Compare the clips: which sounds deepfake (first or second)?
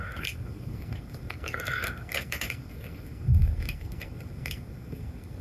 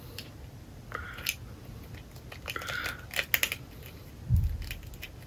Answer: first